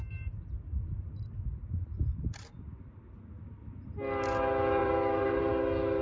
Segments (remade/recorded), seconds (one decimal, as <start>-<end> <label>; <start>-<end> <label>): 0.0-4.8 recorded; 4.8-5.5 remade; 5.5-6.0 recorded